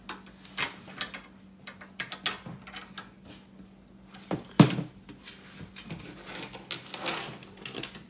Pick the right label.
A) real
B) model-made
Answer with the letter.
A